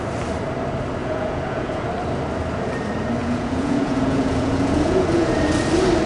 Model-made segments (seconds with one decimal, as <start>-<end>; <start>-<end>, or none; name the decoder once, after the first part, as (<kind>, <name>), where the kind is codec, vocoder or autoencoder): 1.0-1.8 (vocoder, Vocos); 3.2-5.3